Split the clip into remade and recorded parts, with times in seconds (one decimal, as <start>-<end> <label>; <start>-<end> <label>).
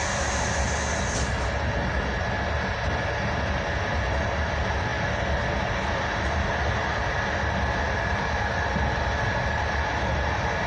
0.0-10.7 recorded